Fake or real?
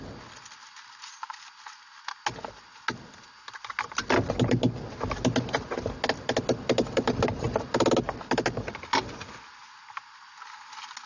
real